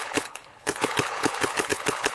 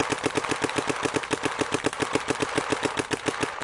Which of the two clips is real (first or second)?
second